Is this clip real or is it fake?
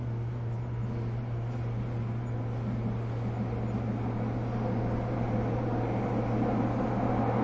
real